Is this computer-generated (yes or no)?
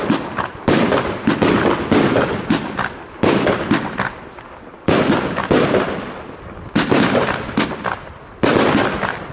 no